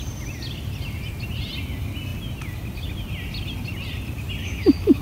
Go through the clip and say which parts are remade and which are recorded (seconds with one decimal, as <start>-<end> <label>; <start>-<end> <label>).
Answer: 0.0-4.4 recorded; 4.4-5.0 remade

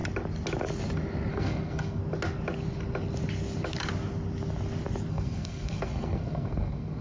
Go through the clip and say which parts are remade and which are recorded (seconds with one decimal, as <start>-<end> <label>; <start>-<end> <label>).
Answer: 0.0-1.3 recorded; 1.3-2.0 remade; 2.0-5.1 recorded; 5.1-7.0 remade